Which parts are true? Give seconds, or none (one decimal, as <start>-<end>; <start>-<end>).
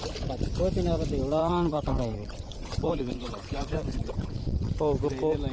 0.0-1.4; 4.7-5.5